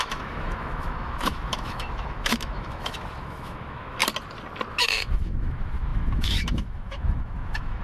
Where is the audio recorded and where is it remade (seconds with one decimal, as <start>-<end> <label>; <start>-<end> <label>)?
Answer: 0.0-4.0 remade; 4.0-4.8 recorded; 4.8-7.8 remade